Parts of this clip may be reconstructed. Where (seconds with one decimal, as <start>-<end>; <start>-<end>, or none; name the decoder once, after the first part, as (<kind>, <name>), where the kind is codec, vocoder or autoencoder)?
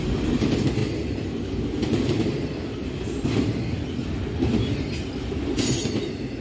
none